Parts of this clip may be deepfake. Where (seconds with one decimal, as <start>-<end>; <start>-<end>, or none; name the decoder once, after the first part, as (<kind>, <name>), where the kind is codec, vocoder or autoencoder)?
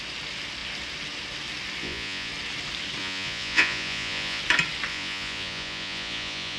1.8-2.3 (vocoder, Vocos); 3.0-4.4; 4.9-6.6